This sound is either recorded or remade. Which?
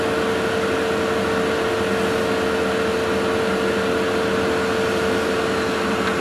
recorded